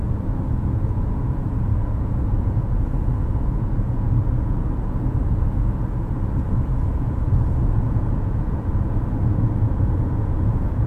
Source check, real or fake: fake